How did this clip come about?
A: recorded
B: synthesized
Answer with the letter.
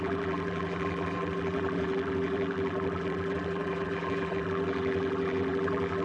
B